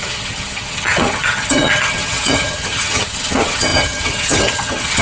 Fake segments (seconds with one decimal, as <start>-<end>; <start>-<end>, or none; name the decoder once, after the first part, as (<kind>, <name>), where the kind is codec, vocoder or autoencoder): 0.0-5.0 (vocoder, HiFi-GAN)